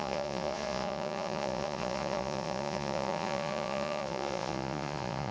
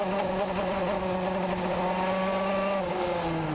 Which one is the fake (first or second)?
first